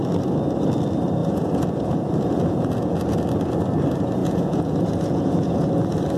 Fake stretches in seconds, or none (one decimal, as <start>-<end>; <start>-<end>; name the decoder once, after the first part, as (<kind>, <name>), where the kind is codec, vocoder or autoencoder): 1.2-3.2 (vocoder, Vocos); 4.2-5.7

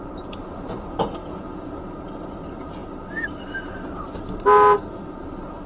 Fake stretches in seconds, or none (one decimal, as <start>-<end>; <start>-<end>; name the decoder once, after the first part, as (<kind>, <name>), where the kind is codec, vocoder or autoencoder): 1.2-1.9 (vocoder, Vocos)

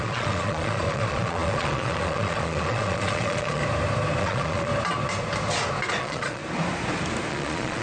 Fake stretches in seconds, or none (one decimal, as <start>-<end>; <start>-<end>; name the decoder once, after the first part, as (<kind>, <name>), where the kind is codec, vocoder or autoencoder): 0.0-3.6 (vocoder, Vocos); 4.2-4.7; 6.0-6.4; 7.3-7.8